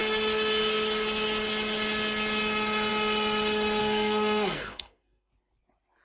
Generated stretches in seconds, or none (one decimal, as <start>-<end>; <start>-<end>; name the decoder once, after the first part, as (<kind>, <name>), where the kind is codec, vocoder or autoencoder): 3.8-5.3 (codec, SNAC)